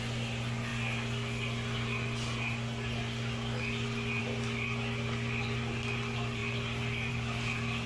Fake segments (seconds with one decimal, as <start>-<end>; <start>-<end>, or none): none